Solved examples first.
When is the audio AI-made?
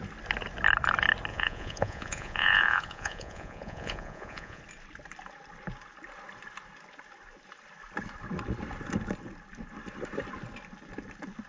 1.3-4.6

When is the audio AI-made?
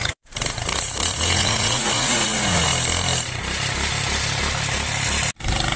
0.0-2.7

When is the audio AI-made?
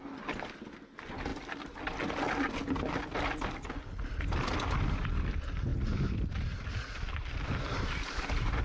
none